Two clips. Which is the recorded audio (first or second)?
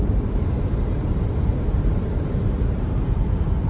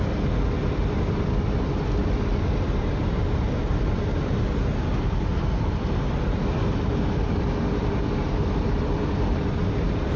second